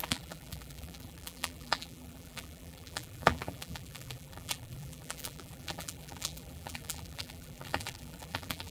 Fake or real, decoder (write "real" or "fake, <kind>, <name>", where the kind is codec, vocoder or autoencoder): fake, vocoder, BigVGAN v2